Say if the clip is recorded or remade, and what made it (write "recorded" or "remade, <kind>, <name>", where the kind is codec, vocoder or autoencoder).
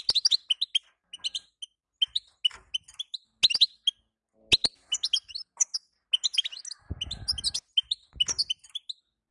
recorded